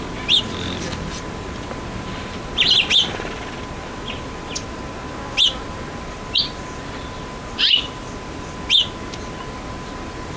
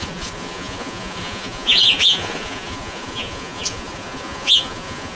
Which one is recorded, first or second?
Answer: first